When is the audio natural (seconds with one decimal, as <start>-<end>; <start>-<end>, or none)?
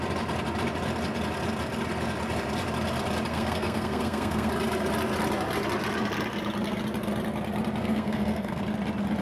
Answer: 0.0-3.3; 4.5-7.8; 8.6-9.2